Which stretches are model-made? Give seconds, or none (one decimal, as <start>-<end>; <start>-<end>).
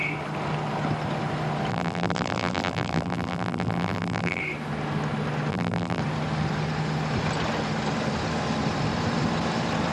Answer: 1.7-4.4; 5.5-6.0